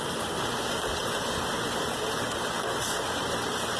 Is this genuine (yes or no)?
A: yes